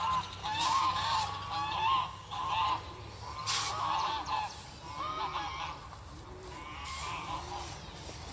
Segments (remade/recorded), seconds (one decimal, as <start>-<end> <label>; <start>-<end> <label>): 0.0-0.4 recorded; 0.4-1.2 remade; 1.2-1.8 recorded; 1.8-2.4 remade; 2.4-8.3 recorded